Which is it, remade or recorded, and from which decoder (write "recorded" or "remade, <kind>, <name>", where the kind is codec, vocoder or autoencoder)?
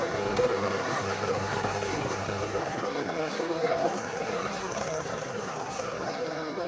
remade, codec, SNAC